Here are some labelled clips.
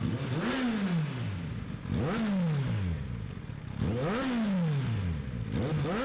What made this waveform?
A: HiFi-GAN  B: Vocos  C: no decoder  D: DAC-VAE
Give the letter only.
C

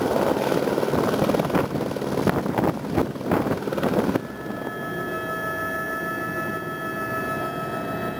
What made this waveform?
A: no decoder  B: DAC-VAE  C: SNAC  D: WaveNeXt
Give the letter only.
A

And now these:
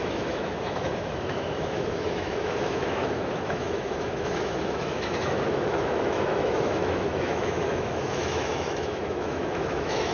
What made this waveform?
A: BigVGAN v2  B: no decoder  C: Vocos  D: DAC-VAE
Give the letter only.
D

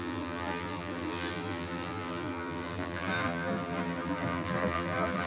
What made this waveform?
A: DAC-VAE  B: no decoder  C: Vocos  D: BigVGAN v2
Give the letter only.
D